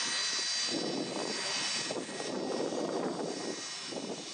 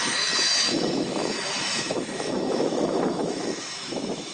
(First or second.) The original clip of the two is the first